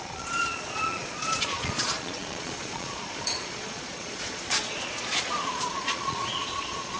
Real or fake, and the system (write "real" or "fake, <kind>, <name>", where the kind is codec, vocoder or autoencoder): fake, vocoder, Vocos